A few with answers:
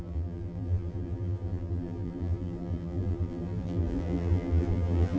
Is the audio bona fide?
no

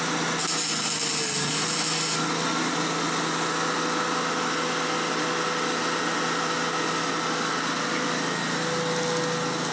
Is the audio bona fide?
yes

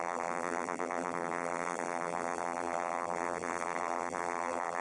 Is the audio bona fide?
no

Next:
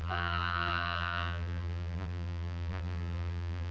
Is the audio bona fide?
no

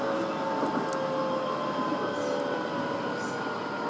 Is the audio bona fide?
yes